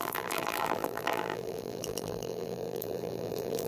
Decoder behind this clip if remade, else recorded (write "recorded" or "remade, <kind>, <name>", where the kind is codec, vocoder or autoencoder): remade, vocoder, BigVGAN v2